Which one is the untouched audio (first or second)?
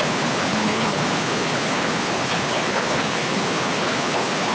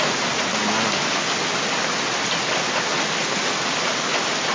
second